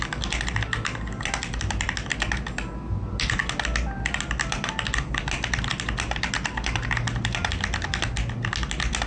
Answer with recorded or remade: recorded